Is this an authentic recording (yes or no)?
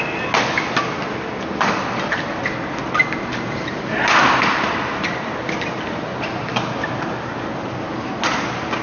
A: yes